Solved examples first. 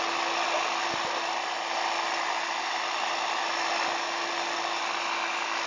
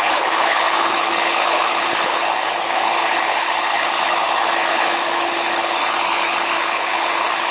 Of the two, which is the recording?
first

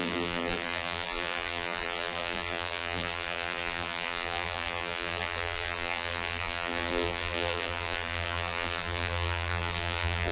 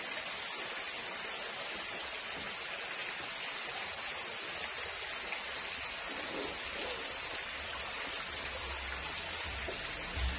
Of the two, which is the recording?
second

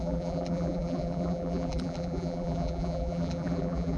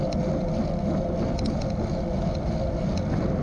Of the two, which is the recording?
second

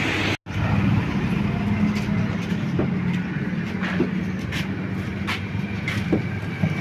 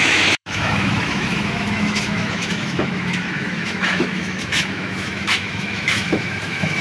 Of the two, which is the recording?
first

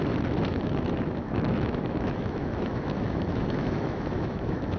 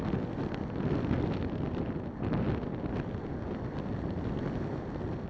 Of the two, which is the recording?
second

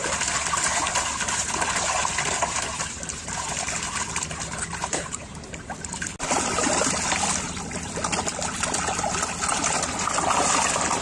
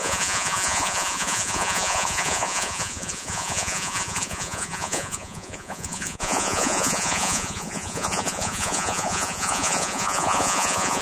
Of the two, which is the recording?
first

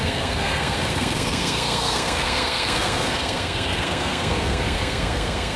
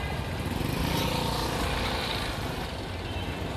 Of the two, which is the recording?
second